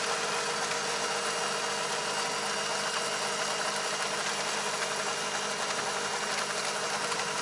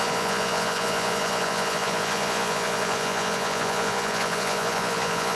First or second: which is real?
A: first